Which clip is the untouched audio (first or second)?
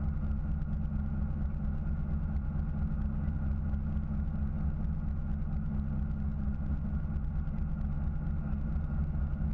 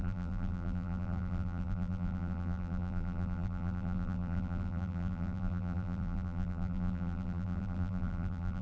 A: first